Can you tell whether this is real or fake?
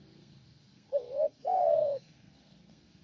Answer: fake